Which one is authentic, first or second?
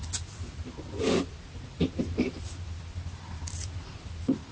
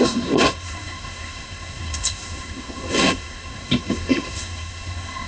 first